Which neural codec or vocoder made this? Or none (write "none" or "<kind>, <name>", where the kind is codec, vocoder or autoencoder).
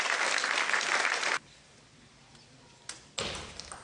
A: none